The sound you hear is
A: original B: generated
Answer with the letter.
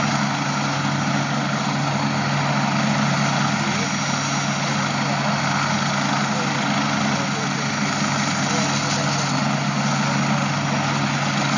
A